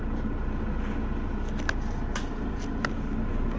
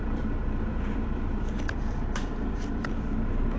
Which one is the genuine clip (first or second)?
first